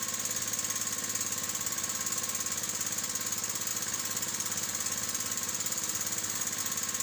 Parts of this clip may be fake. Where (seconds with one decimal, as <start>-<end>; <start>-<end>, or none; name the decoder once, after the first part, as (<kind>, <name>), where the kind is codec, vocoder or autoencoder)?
3.7-6.6 (vocoder, BigVGAN v2)